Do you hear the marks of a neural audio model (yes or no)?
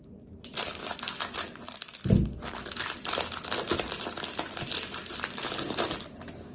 no